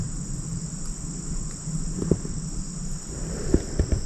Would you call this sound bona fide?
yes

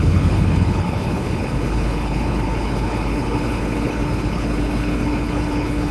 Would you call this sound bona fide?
no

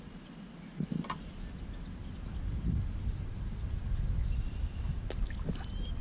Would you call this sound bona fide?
yes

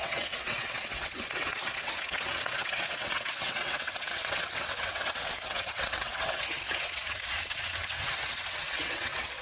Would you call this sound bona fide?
no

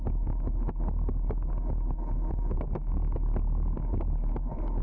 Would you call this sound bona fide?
yes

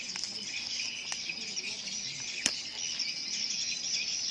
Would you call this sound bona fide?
yes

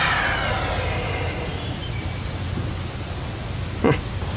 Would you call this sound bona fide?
yes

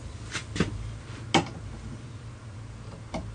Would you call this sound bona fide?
yes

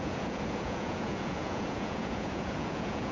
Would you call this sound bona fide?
no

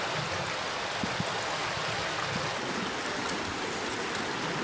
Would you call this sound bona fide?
yes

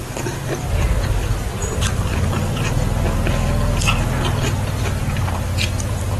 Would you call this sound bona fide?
yes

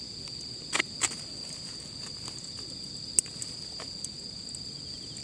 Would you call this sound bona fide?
yes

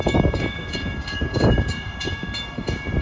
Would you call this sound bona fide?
no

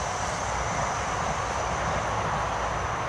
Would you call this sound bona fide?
yes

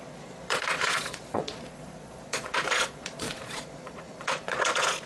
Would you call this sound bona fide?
no